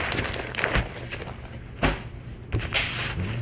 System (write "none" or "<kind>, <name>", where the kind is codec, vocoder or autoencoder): none